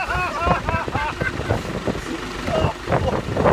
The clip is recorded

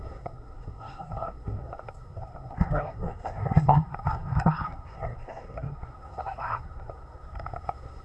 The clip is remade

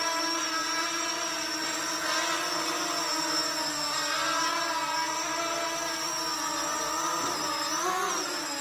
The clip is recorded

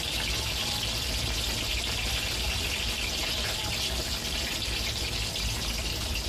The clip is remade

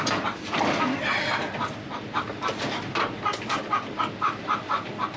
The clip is recorded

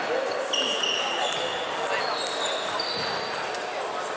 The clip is recorded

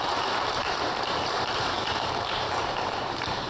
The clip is remade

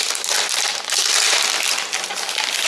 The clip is recorded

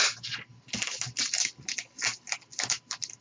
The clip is recorded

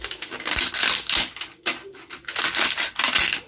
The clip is recorded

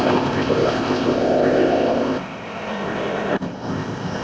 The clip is remade